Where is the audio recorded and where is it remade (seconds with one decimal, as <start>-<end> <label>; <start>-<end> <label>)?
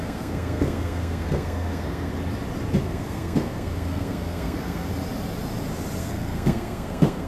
0.0-2.1 remade; 2.1-2.8 recorded; 2.8-4.9 remade; 4.9-6.0 recorded; 6.0-7.3 remade